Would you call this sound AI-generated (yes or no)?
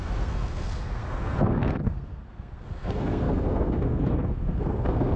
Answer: yes